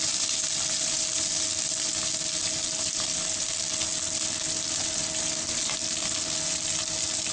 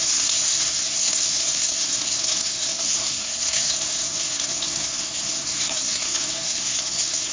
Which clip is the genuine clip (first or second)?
first